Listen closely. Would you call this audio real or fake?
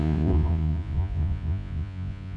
fake